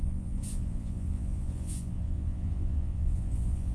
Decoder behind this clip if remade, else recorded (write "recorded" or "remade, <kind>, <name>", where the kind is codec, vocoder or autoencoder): remade, vocoder, Vocos